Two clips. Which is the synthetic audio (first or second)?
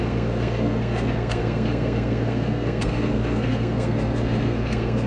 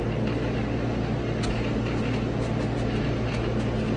first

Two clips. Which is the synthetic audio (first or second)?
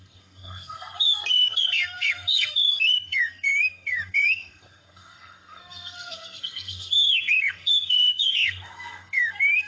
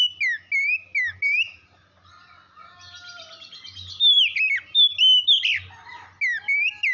first